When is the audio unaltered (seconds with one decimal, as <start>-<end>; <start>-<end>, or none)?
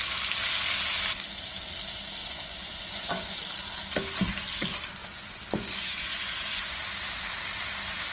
0.0-2.2; 3.4-5.0; 6.8-8.1